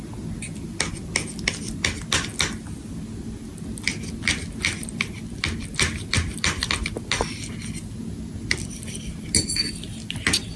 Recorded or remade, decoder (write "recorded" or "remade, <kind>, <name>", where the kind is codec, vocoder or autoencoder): recorded